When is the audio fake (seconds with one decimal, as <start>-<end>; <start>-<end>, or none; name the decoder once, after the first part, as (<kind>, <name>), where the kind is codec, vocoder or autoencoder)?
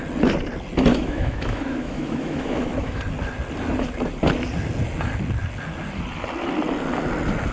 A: 0.9-3.0 (autoencoder, DAC-VAE)